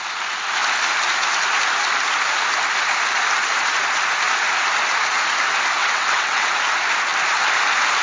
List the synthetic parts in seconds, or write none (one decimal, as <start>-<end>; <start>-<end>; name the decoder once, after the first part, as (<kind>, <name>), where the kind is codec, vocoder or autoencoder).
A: 5.8-6.5 (vocoder, WaveNeXt)